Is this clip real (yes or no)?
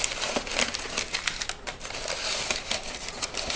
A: yes